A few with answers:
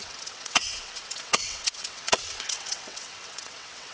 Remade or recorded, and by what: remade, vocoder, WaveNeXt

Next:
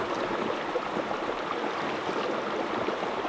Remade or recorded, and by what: recorded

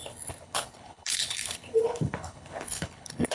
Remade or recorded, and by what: remade, codec, HILCodec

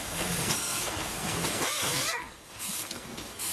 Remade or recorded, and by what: remade, codec, SNAC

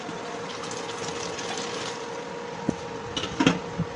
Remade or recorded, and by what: recorded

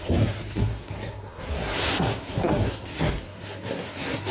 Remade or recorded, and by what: remade, codec, SNAC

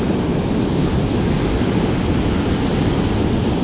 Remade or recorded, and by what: recorded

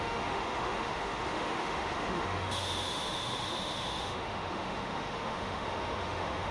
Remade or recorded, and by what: remade, autoencoder, DAC-VAE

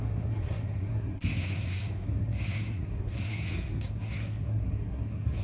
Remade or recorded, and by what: remade, codec, SNAC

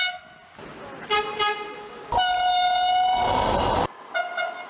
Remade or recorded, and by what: recorded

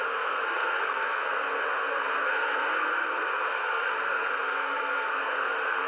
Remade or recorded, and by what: remade, codec, SNAC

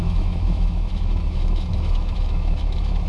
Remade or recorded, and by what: remade, autoencoder, DAC-VAE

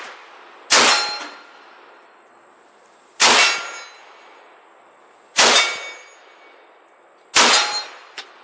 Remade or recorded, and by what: recorded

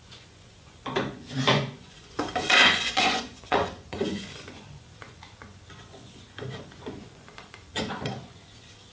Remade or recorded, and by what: remade, vocoder, Vocos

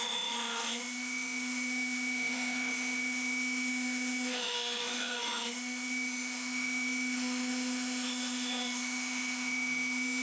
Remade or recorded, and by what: remade, autoencoder, DAC-VAE